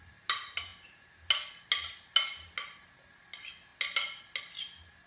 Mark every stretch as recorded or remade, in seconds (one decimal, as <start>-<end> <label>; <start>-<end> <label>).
0.0-5.1 recorded